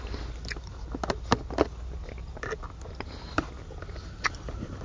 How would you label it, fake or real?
real